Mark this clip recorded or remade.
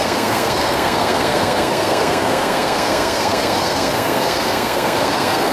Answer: remade